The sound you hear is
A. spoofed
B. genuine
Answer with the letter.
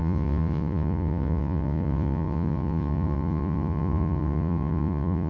A